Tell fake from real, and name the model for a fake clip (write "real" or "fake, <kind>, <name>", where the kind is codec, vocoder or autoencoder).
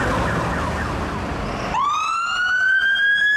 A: real